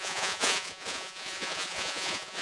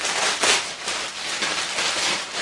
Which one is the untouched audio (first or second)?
second